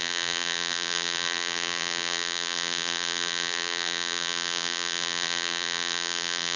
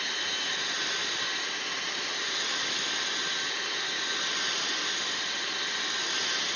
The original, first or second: second